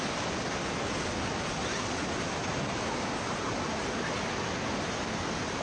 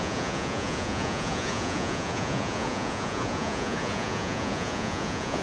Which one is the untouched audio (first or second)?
first